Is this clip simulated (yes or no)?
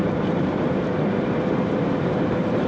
yes